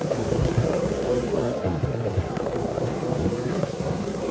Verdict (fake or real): fake